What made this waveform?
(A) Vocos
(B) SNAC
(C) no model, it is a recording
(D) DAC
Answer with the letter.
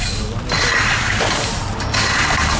C